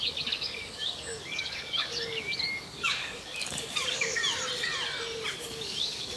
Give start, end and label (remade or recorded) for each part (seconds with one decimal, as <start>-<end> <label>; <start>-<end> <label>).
0.0-4.2 remade; 4.2-5.4 recorded; 5.4-6.2 remade